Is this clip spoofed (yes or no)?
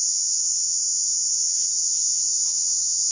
yes